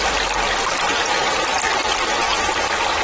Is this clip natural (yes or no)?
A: yes